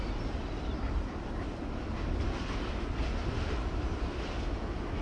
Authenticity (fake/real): real